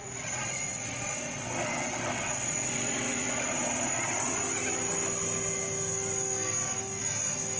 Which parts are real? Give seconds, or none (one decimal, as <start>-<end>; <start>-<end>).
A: 4.4-7.6